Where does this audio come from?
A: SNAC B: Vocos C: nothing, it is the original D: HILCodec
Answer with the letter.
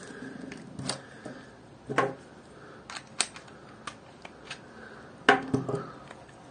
C